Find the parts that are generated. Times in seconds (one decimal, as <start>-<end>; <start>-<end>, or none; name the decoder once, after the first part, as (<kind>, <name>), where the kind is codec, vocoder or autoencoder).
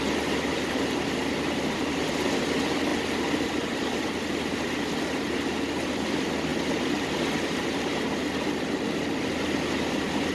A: none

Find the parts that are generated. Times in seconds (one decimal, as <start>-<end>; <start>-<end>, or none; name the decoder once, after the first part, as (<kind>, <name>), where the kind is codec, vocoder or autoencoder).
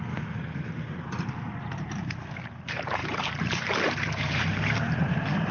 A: 0.0-5.5 (vocoder, BigVGAN v2)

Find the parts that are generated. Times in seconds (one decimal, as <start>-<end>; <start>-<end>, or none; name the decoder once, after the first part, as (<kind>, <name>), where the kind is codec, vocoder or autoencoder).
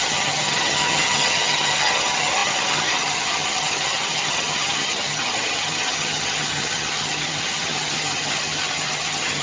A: 0.0-9.4 (vocoder, HiFi-GAN)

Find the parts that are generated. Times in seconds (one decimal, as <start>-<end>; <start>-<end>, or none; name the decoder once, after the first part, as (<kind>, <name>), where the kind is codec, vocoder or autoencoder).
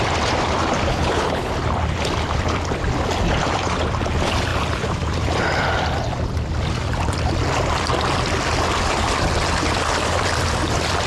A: 0.9-1.5 (codec, HILCodec)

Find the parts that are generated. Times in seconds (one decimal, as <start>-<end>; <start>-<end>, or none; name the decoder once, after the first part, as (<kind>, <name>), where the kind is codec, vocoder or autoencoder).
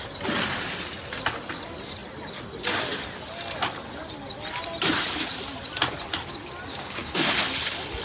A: 6.7-7.2 (codec, DAC)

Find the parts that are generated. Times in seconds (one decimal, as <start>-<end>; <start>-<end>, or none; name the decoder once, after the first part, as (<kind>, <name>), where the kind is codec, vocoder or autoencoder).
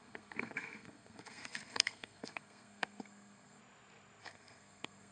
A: 0.0-3.6 (codec, SNAC); 4.2-5.1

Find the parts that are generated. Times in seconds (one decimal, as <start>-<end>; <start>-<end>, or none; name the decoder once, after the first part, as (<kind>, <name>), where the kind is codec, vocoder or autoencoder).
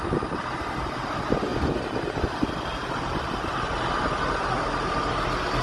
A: none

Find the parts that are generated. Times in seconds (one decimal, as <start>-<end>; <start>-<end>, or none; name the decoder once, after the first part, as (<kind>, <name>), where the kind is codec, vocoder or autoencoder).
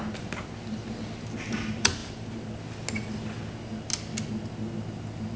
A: none